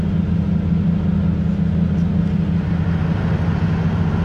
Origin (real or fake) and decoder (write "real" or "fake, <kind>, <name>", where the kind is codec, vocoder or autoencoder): real